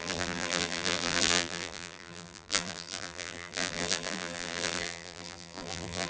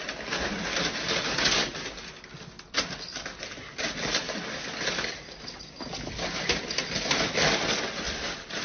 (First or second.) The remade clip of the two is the first